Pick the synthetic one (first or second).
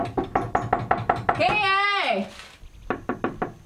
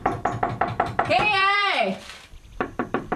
second